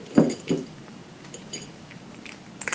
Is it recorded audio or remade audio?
recorded